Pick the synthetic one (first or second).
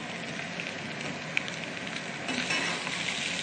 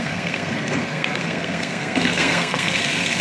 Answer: second